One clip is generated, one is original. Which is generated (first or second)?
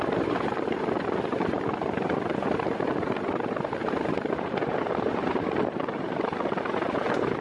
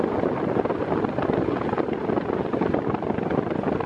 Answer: first